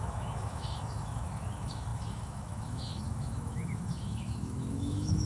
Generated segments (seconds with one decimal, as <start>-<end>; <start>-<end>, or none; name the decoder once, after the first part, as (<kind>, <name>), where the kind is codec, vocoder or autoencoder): 0.0-5.3 (autoencoder, DAC-VAE)